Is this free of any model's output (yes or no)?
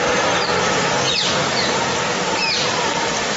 yes